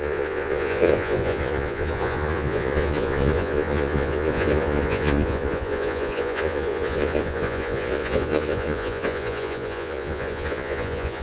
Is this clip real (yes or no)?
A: no